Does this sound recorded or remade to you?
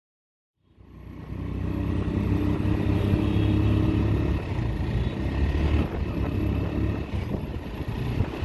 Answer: recorded